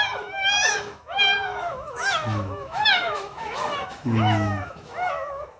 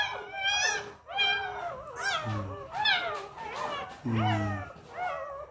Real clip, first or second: second